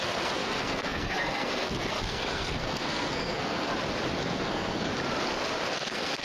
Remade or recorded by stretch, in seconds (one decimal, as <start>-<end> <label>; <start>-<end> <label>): 0.0-3.7 remade; 3.7-4.2 recorded; 4.2-4.9 remade; 4.9-5.7 recorded; 5.7-6.2 remade